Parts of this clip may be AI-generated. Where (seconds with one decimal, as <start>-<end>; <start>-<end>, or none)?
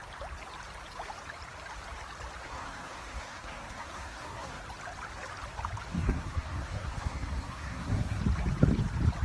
2.4-4.6; 5.9-8.2